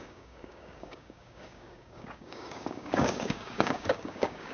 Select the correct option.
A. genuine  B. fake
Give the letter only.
B